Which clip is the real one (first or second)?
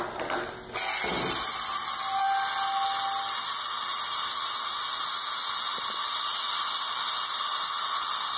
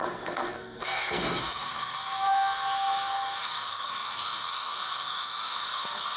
first